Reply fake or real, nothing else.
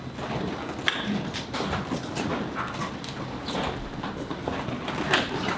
real